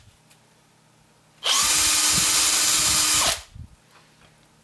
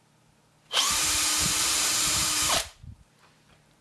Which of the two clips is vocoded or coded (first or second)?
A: second